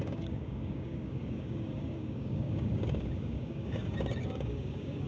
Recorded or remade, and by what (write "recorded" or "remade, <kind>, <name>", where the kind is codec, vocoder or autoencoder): remade, codec, DAC